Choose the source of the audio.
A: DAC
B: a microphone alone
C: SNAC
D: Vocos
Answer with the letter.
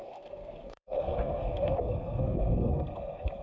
C